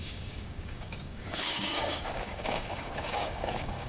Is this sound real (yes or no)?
no